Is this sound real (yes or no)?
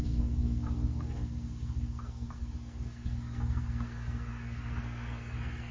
no